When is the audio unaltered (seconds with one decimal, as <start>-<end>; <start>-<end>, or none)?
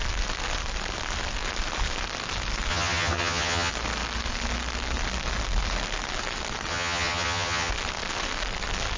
0.0-2.7; 3.7-6.7; 7.7-9.0